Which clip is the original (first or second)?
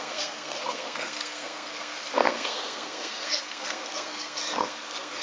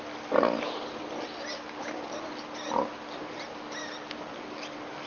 second